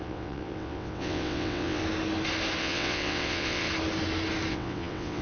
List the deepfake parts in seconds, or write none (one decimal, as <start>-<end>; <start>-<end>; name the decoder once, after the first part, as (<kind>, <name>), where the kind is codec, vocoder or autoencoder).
0.0-1.8 (vocoder, WaveNeXt); 2.6-3.7; 4.5-5.2